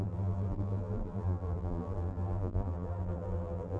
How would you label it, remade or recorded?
remade